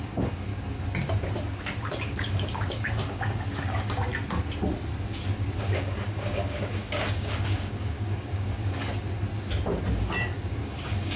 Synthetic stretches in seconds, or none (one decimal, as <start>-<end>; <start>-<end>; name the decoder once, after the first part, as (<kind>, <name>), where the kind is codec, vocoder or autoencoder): 0.0-0.5 (codec, DAC); 1.9-4.1; 5.5-8.8; 10.0-11.2

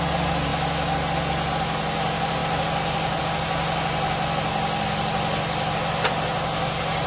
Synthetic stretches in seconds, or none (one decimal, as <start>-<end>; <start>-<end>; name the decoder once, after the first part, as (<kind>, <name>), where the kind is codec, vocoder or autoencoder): none

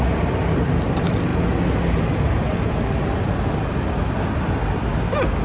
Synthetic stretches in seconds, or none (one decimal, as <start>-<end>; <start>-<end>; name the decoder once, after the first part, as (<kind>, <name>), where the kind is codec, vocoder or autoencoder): none

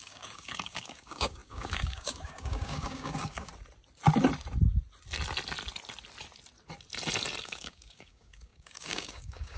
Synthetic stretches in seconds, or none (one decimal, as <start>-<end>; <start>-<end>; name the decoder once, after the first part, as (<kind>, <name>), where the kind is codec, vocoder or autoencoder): 0.0-3.5 (codec, DAC); 7.4-9.6

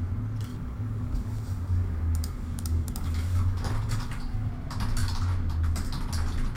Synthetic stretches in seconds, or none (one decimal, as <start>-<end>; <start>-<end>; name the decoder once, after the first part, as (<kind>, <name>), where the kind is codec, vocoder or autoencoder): 0.5-4.5 (codec, DAC)

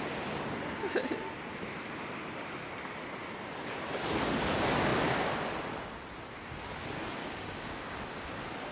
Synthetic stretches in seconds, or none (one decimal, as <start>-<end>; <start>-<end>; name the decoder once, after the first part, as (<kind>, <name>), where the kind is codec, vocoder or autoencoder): 7.2-8.0 (codec, DAC)

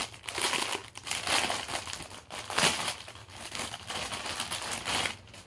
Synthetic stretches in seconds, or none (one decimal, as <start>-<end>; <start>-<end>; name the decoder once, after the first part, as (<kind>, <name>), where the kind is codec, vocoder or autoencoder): 3.2-3.9 (codec, DAC)